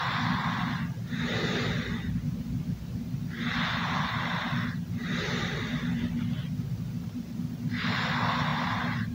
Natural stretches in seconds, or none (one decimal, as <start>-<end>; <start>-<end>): 0.0-9.1